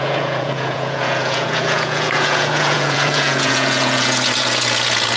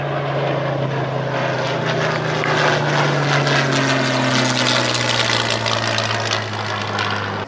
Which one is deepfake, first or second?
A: first